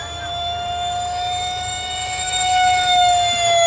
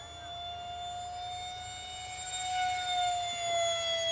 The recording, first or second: second